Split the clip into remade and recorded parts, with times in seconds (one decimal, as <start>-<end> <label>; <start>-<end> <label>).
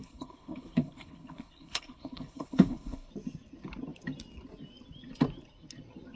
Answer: 0.0-3.1 remade; 3.1-6.2 recorded